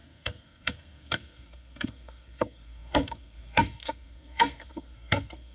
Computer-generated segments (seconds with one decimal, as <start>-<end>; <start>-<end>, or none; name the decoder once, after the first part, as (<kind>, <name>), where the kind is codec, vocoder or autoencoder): 0.0-5.5 (codec, SNAC)